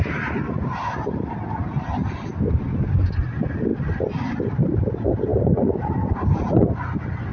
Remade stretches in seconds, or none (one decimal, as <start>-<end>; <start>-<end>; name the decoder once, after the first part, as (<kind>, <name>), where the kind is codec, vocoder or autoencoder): none